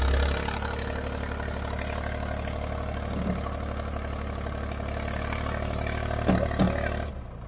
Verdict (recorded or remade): recorded